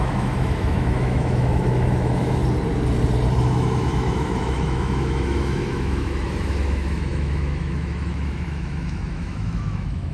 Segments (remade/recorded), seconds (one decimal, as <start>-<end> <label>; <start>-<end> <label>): 0.0-2.4 remade; 2.4-3.4 recorded; 3.4-10.1 remade